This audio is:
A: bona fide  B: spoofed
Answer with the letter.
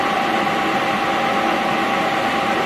A